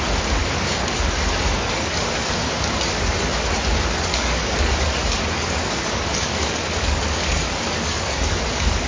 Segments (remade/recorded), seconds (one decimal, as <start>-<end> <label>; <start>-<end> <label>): 0.0-0.4 recorded; 0.4-3.0 remade; 3.0-4.1 recorded; 4.1-8.9 remade